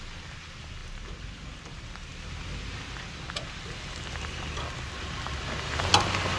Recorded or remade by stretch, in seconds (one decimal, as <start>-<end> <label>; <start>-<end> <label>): 0.0-6.4 recorded